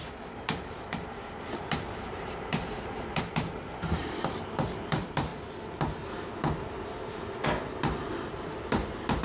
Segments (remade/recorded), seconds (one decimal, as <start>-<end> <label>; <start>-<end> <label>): 0.0-5.3 remade; 5.3-8.4 recorded; 8.4-9.2 remade